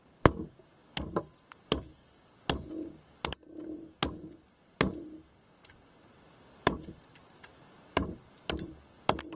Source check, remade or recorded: recorded